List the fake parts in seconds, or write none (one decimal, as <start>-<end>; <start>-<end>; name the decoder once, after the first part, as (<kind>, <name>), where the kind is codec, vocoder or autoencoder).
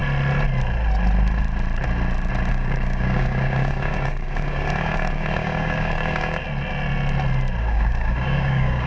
2.5-6.4 (codec, DAC); 7.6-8.9